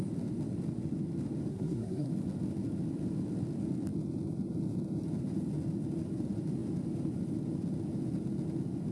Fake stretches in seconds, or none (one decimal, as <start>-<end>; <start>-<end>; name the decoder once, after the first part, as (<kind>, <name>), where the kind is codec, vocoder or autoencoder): 1.5-2.1 (codec, SNAC)